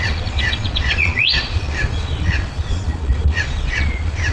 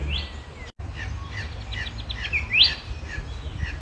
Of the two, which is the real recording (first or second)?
second